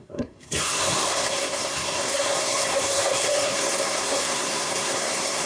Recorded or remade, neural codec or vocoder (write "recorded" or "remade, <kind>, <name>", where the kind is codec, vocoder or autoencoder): remade, codec, SNAC